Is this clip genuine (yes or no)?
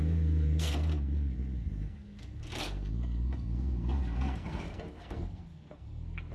no